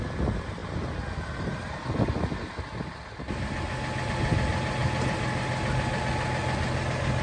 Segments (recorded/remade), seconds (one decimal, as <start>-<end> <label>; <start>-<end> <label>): 0.0-7.2 recorded